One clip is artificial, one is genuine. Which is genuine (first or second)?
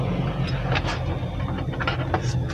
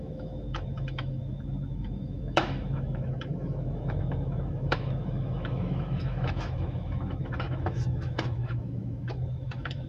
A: first